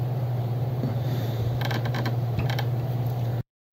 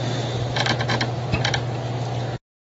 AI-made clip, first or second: first